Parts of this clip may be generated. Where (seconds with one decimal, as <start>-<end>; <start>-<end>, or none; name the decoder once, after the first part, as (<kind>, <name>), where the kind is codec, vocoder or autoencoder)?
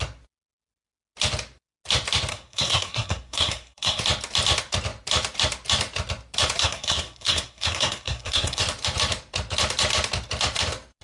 2.3-4.0 (codec, SNAC); 6.6-8.6